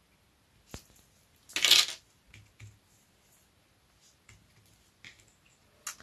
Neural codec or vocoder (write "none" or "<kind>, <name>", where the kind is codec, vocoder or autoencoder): none